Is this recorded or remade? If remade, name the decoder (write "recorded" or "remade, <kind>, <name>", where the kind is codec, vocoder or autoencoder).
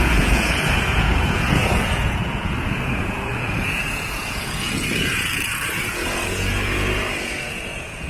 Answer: remade, vocoder, Vocos